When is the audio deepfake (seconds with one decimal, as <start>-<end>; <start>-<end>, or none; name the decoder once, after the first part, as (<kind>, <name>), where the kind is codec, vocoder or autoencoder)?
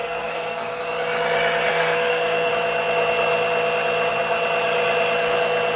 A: 0.0-0.8 (codec, SNAC); 1.7-2.5